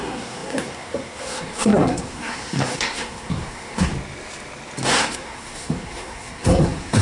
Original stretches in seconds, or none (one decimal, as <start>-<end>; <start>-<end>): 3.9-4.9